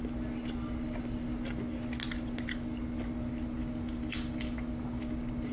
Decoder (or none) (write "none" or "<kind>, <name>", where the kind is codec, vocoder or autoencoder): none